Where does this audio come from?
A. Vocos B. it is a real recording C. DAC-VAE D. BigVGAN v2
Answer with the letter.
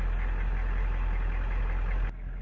B